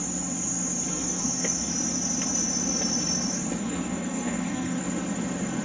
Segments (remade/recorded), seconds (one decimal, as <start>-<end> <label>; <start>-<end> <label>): 0.0-0.9 recorded; 0.9-1.7 remade; 1.7-3.6 recorded; 3.6-4.8 remade; 4.8-5.6 recorded